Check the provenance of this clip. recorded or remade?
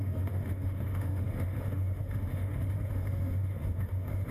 remade